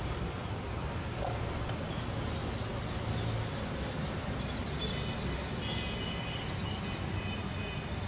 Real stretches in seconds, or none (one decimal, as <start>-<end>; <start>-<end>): 0.0-8.1